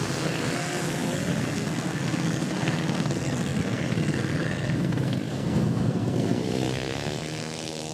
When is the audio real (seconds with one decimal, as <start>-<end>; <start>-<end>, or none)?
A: none